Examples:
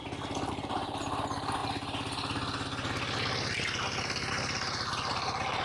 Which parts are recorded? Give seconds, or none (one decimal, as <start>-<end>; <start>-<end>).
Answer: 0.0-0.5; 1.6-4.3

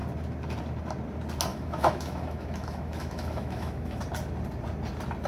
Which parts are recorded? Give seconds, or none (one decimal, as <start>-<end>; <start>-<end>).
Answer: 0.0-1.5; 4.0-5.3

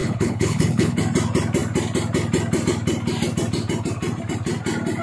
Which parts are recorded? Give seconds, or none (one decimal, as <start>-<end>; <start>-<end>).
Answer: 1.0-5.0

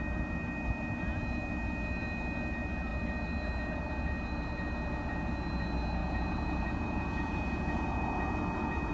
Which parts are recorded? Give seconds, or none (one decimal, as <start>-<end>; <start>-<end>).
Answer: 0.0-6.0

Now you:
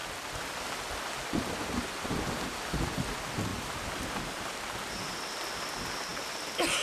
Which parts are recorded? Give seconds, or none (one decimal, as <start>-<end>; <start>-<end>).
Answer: 0.8-3.5; 4.9-6.8

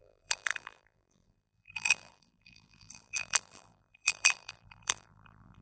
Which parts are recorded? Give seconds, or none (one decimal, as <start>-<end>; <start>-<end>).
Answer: none

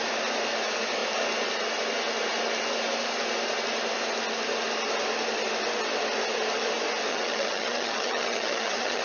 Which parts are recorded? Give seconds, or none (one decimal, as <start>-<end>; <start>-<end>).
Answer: 0.0-7.1